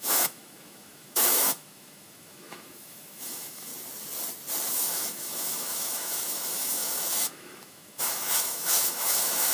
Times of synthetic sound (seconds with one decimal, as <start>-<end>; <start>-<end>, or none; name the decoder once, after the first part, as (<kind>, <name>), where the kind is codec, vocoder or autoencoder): 0.0-3.7 (autoencoder, DAC-VAE); 4.7-9.5